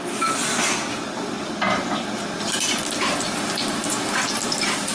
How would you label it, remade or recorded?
recorded